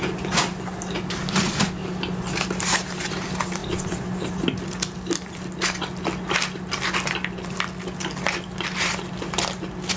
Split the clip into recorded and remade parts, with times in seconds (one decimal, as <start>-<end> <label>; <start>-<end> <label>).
0.0-10.0 recorded